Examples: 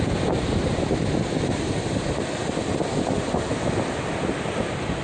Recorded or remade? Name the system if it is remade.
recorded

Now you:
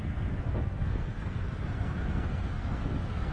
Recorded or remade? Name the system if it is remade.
remade, codec, SNAC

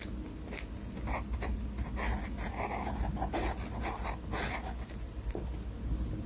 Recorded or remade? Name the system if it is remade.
recorded